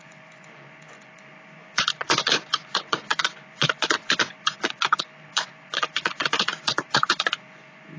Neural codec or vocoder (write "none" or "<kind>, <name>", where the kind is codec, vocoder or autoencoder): vocoder, Vocos